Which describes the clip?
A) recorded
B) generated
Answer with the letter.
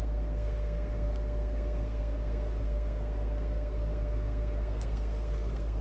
B